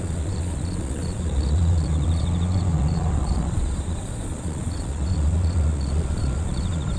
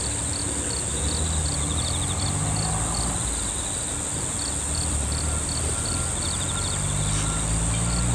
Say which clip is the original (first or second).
second